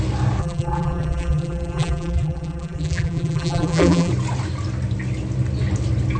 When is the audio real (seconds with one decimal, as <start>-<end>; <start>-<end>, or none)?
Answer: 0.0-0.4; 4.1-6.2